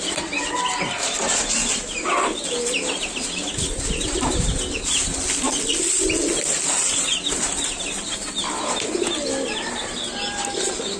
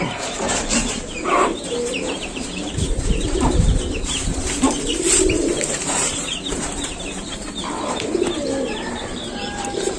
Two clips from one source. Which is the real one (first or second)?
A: first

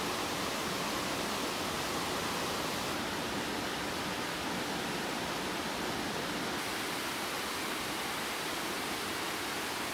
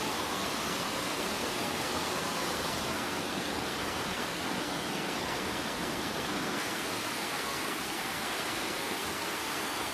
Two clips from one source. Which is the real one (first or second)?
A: first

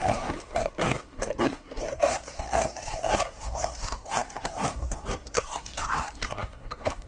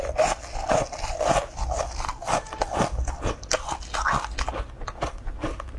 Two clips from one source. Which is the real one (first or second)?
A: second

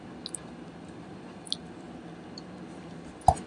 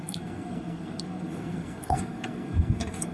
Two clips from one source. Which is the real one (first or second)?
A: first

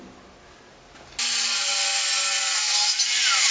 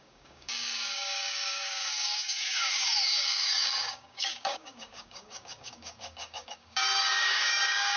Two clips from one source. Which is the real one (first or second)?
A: first